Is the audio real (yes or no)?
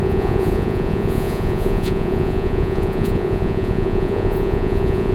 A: no